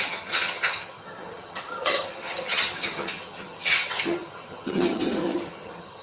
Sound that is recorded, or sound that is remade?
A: remade